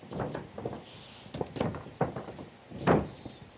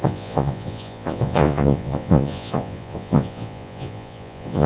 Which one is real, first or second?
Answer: first